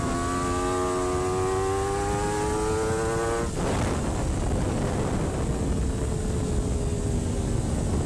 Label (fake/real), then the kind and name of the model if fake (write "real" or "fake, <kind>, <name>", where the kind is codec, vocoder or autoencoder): real